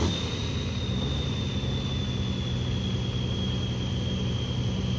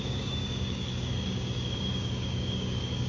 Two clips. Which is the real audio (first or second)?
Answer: first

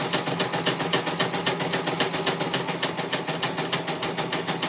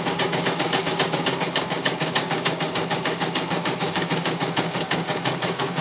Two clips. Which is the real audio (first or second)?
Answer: first